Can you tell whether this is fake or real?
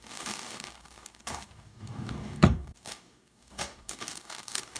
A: fake